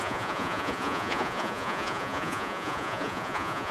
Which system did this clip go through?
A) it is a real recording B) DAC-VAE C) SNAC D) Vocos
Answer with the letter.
D